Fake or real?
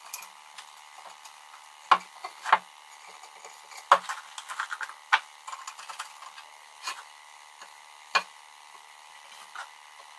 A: real